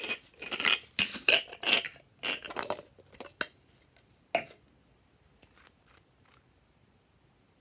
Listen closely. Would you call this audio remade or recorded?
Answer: recorded